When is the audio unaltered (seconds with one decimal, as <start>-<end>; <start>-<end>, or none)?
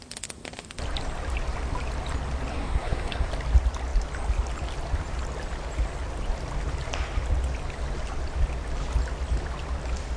0.0-2.5; 3.3-10.2